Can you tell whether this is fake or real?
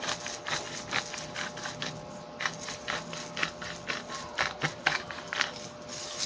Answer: real